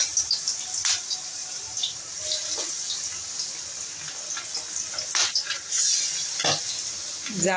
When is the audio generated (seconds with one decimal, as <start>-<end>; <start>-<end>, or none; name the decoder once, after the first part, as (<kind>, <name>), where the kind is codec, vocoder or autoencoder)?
1.4-2.0 (vocoder, BigVGAN v2); 5.2-6.0